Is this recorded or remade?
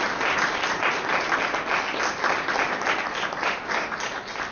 recorded